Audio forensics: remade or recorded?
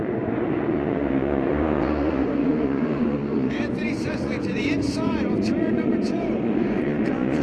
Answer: remade